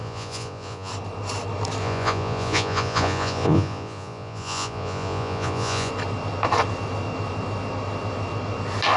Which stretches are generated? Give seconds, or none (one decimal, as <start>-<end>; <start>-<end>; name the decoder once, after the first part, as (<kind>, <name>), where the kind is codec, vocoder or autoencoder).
0.0-0.9 (vocoder, Vocos); 1.8-5.9